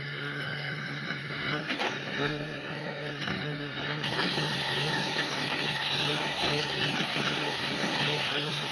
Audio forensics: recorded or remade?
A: remade